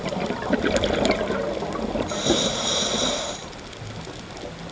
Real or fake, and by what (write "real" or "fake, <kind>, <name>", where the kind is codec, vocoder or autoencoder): real